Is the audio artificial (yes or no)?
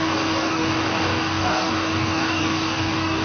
yes